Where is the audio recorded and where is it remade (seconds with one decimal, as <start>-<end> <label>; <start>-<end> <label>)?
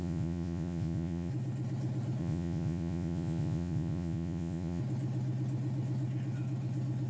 0.0-1.3 remade; 1.3-2.2 recorded; 2.2-4.8 remade; 4.8-7.1 recorded